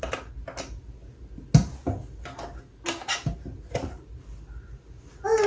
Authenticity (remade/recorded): recorded